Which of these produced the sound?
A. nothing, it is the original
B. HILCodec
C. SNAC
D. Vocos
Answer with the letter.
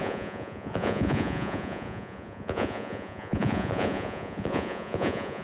D